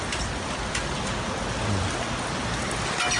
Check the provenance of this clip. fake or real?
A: real